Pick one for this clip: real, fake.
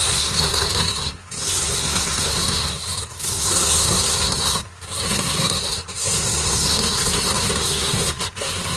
fake